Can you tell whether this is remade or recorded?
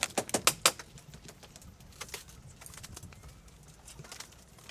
recorded